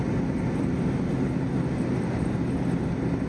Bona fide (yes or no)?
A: yes